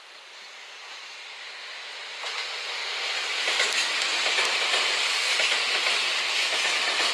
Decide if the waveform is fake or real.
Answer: real